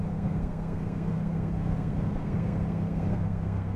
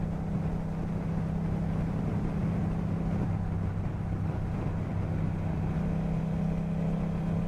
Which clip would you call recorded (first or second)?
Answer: second